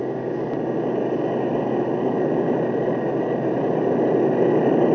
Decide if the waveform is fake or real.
real